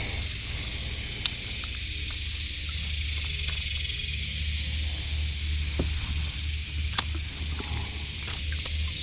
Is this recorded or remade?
recorded